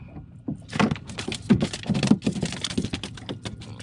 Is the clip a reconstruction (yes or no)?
no